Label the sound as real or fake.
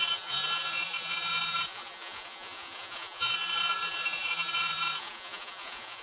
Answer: fake